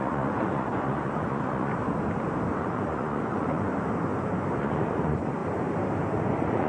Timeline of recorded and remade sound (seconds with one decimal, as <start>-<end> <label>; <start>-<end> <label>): 0.0-1.7 remade; 1.7-2.6 recorded; 2.6-3.7 remade; 3.7-4.6 recorded; 4.6-5.4 remade; 5.4-6.2 recorded; 6.2-6.7 remade